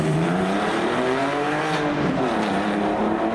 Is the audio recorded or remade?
remade